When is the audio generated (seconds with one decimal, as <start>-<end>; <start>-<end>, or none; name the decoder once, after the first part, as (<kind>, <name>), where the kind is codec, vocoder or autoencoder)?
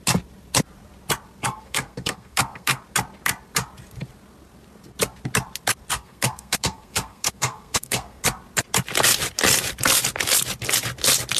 1.4-2.8 (codec, SNAC); 5.9-8.2